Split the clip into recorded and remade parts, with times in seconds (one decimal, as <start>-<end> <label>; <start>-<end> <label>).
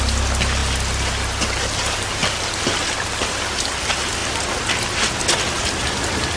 0.0-6.4 recorded